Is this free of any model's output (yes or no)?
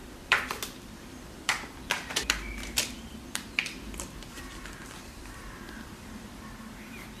no